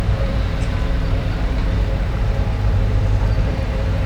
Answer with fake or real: fake